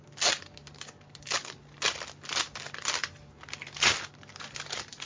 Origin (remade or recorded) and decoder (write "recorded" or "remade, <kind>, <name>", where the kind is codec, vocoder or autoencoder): recorded